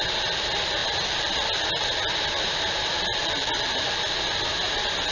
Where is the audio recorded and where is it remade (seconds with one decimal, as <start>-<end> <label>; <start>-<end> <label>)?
0.0-5.1 recorded